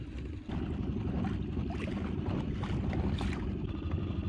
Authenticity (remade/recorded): recorded